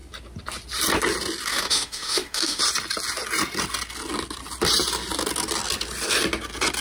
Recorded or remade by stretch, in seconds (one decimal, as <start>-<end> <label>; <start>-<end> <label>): 0.0-1.5 recorded; 1.5-2.6 remade; 2.6-6.8 recorded